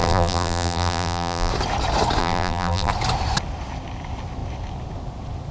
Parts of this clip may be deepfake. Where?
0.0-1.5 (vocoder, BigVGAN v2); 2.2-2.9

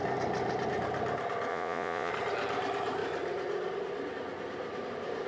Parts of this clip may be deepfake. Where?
1.5-2.1 (vocoder, Vocos)

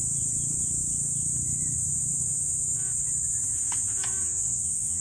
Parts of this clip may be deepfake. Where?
4.2-5.0 (vocoder, Vocos)

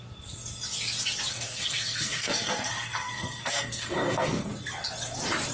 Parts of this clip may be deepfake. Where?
1.3-4.5 (codec, SNAC)

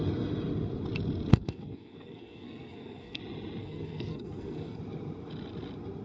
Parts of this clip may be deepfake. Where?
1.3-3.2 (codec, SNAC); 3.6-4.8

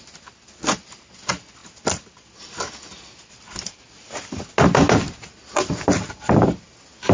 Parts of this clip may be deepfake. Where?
none